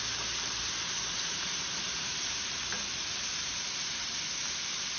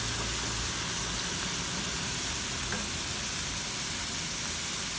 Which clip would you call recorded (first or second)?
second